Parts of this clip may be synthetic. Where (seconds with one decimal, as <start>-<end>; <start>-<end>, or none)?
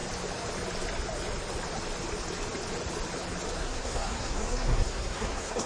3.6-5.7